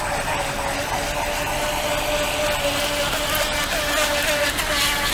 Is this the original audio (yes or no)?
yes